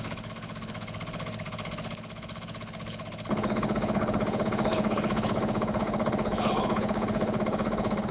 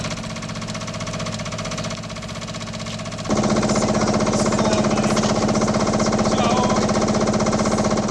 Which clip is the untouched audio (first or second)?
second